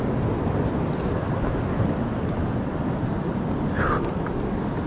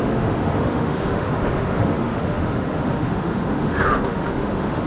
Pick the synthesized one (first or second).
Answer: second